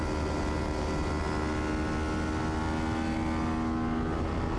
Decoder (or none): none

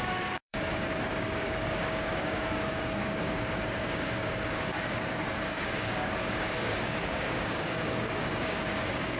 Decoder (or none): codec, DAC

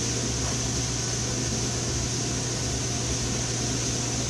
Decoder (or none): none